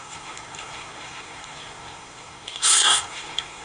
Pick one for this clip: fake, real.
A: fake